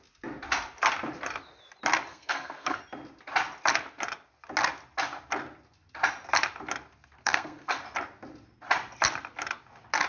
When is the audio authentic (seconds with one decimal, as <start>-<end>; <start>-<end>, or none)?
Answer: 0.0-2.1; 2.8-7.2; 7.8-10.1

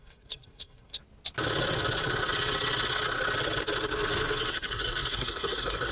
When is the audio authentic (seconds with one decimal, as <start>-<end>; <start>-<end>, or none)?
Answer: 1.0-4.5